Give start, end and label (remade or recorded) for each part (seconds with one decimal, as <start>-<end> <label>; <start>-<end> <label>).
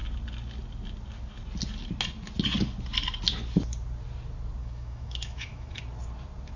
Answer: 0.0-4.6 recorded; 4.6-5.8 remade; 5.8-6.6 recorded